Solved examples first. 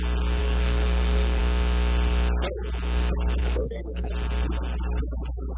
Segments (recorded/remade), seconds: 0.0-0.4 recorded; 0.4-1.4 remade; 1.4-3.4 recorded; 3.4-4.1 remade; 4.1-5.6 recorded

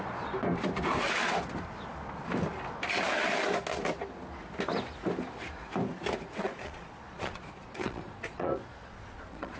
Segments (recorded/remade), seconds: 0.0-6.4 recorded; 6.4-9.6 remade